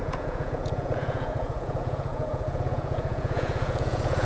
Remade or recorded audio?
remade